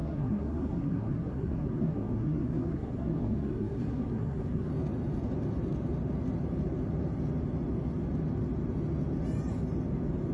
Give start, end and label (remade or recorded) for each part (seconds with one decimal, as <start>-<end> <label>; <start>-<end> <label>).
0.0-4.7 remade; 4.7-10.3 recorded